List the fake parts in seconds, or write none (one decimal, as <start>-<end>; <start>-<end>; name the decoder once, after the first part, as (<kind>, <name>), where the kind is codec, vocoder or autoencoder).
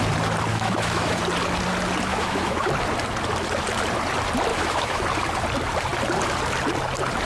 0.5-1.2 (autoencoder, DAC-VAE); 2.1-2.7; 4.5-5.0